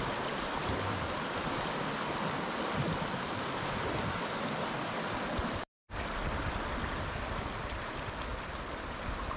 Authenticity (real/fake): real